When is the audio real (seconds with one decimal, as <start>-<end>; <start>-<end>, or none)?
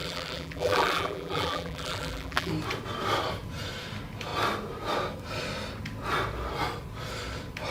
2.5-7.7